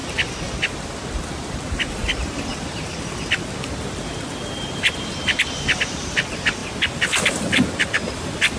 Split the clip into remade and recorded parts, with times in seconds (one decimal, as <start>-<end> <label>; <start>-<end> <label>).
0.0-1.9 recorded; 1.9-8.6 remade